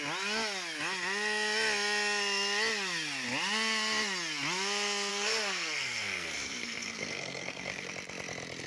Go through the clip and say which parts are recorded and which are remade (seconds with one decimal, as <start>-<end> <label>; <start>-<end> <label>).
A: 0.0-5.1 recorded; 5.1-7.9 remade; 7.9-8.7 recorded